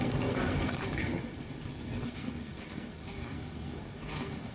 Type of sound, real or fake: fake